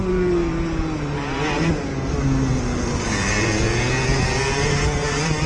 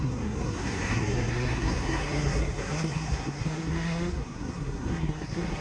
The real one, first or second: first